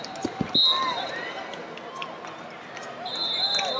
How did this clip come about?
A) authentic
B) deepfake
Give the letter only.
A